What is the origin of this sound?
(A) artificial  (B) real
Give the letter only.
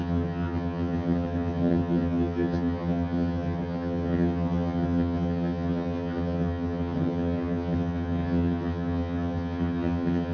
A